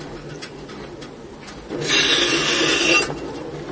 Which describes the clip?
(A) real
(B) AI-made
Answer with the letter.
A